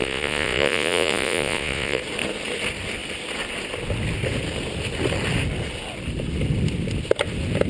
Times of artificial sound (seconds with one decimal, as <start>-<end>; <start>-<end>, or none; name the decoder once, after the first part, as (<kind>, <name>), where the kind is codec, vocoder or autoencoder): 0.0-2.0 (vocoder, Vocos)